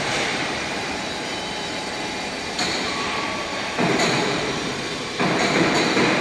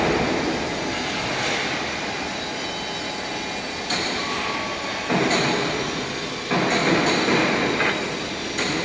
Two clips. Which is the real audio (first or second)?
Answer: second